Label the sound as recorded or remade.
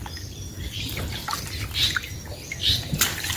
recorded